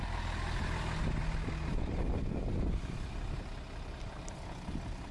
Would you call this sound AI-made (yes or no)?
no